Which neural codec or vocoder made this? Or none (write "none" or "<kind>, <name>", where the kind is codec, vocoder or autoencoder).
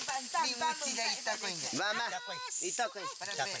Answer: none